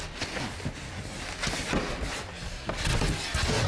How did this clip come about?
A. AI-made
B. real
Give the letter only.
B